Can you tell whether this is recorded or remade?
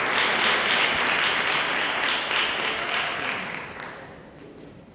recorded